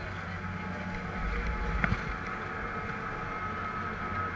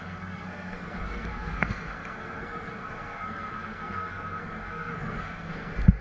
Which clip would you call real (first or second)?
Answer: first